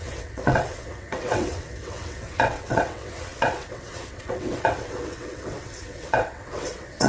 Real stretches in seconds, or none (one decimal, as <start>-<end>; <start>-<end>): none